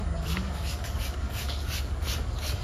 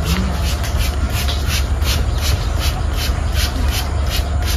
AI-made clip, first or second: first